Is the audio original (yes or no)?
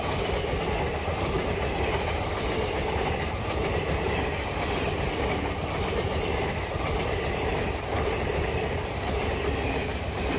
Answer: yes